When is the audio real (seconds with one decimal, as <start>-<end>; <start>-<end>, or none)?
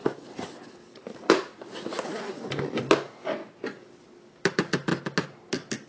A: 0.0-5.9